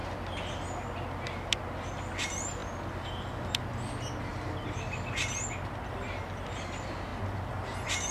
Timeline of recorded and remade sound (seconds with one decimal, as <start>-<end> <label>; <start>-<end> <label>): 0.0-8.1 recorded